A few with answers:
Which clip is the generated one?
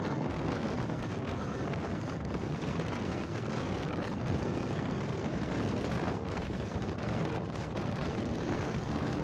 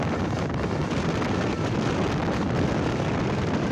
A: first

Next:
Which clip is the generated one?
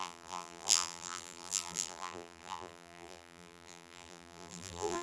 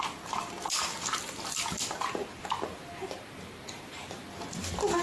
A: first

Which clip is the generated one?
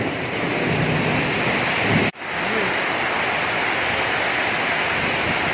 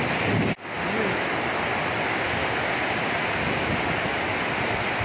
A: first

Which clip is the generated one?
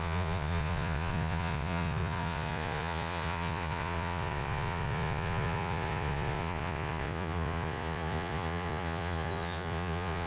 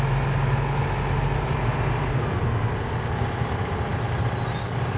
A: first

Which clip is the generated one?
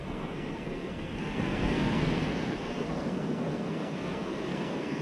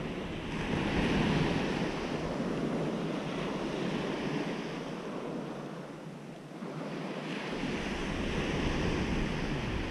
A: first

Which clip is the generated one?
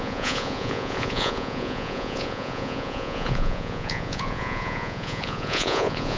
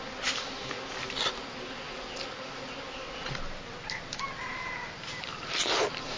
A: first